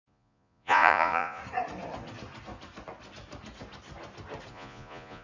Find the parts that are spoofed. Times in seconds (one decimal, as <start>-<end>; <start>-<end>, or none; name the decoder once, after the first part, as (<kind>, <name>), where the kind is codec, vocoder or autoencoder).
0.0-1.4 (vocoder, Vocos); 4.5-5.2